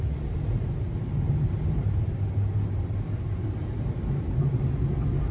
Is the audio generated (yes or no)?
no